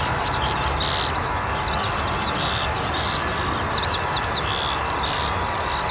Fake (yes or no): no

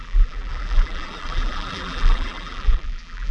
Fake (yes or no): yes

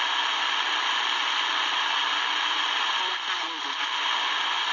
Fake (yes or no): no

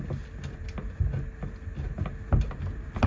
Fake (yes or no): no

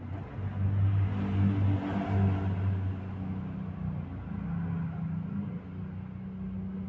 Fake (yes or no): no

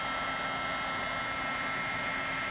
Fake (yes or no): no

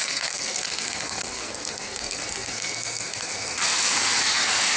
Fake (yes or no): yes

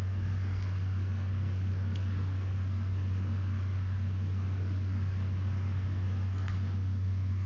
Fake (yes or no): yes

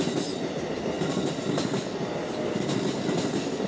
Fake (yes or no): no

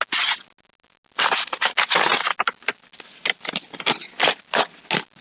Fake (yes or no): no